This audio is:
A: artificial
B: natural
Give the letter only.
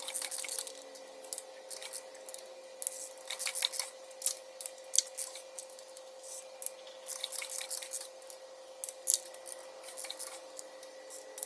B